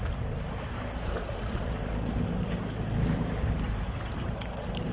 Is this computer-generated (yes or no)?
yes